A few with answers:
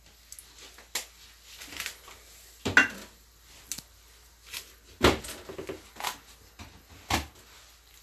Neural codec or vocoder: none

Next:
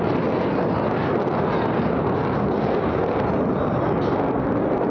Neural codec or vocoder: none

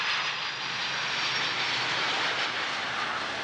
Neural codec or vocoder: none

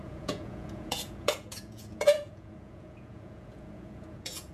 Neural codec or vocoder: vocoder, Vocos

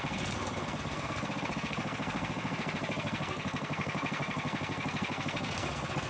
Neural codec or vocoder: codec, SNAC